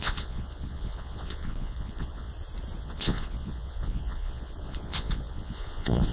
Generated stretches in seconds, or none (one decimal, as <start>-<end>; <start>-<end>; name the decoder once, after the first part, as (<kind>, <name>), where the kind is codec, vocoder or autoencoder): 0.0-2.3 (vocoder, Vocos); 2.8-6.1